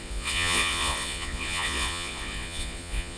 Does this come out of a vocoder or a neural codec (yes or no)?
yes